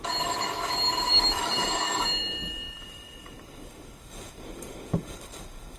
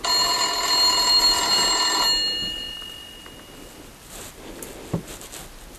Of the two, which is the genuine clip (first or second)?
second